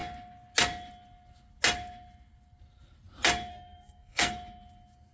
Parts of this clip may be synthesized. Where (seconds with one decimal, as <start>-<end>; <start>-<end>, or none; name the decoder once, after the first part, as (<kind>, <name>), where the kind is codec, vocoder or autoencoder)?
3.5-4.3 (codec, SNAC)